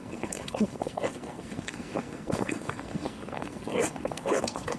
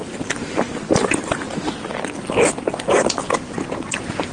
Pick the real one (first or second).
second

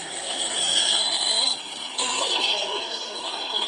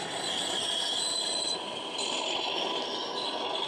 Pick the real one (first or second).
second